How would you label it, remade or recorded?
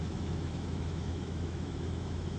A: remade